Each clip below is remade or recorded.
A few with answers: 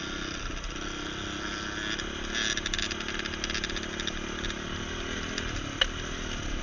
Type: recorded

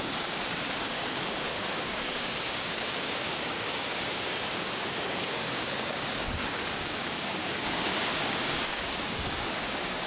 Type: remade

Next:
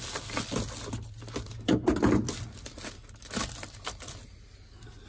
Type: recorded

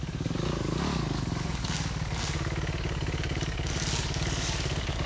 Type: remade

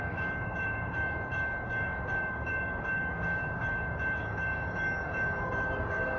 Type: remade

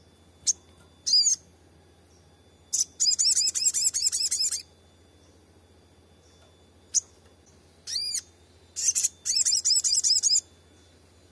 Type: recorded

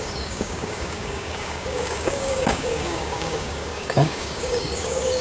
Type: remade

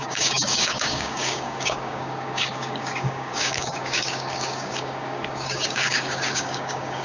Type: remade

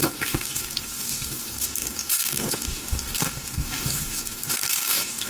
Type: remade